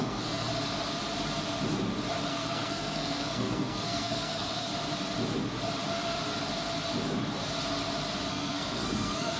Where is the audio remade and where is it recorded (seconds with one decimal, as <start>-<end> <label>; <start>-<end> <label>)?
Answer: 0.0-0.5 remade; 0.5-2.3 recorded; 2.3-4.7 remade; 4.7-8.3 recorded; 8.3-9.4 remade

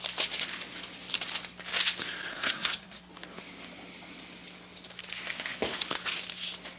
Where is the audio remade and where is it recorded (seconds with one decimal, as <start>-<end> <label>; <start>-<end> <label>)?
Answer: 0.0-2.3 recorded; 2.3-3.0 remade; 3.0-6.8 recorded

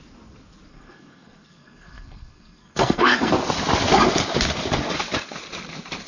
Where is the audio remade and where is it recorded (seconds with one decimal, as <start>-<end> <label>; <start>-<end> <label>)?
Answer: 0.0-0.7 recorded; 0.7-3.3 remade; 3.3-6.1 recorded

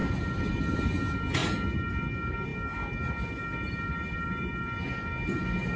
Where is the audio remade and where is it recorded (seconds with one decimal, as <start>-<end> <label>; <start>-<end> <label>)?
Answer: 0.0-5.8 recorded